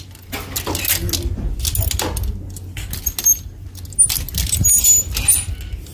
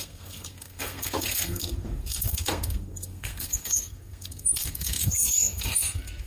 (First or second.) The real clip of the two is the first